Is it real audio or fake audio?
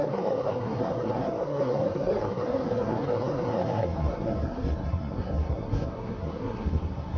fake